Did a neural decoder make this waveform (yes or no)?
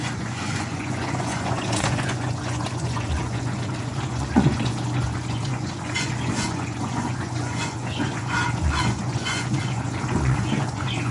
yes